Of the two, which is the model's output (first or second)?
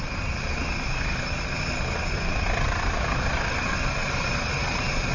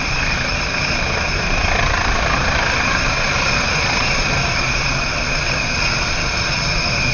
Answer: second